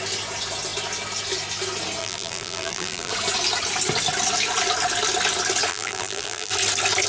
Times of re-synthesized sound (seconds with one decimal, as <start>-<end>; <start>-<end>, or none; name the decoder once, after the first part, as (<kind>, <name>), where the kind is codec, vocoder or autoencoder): 2.0-3.1 (vocoder, BigVGAN v2); 5.7-6.5